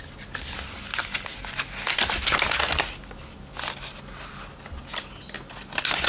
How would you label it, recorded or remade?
recorded